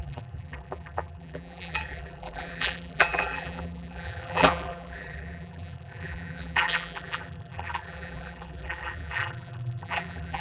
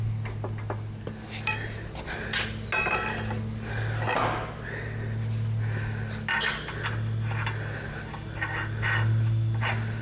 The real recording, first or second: second